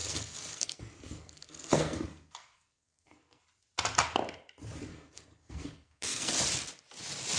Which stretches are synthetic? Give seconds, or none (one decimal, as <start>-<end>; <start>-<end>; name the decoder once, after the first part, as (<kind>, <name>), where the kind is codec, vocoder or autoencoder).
0.0-3.4 (codec, SNAC); 4.9-6.3